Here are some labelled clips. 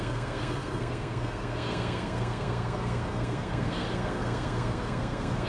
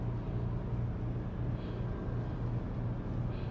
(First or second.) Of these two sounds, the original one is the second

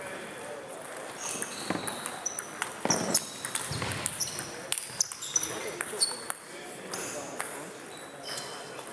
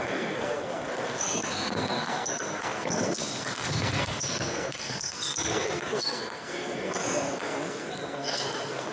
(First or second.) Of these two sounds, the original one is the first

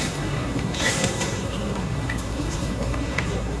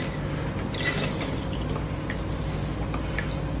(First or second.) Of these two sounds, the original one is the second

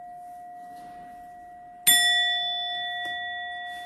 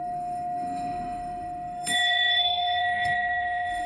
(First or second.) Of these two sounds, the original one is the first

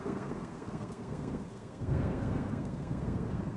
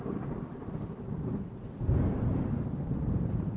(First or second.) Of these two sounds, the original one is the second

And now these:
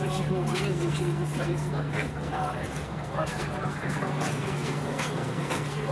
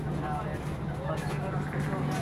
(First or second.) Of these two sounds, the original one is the second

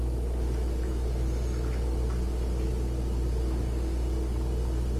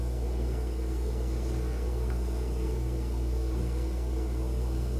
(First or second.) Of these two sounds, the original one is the first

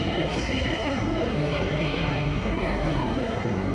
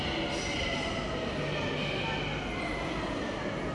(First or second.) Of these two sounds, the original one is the second